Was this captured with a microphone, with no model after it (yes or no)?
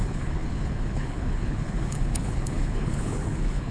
no